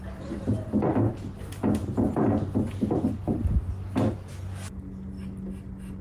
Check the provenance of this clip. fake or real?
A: real